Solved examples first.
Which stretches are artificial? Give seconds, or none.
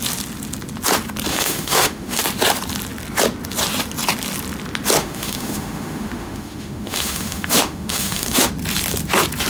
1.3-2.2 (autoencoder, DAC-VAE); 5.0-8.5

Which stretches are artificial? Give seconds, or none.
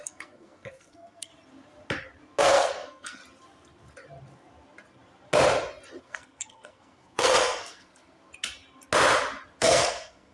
0.0-1.3 (codec, SNAC); 2.4-3.2; 6.0-8.2; 9.6-10.3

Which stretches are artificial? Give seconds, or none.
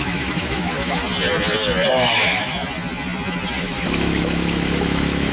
0.0-1.0 (autoencoder, DAC-VAE); 1.9-2.5; 3.6-5.3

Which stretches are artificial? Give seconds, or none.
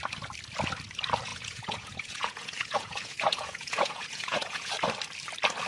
1.3-4.7 (vocoder, Vocos)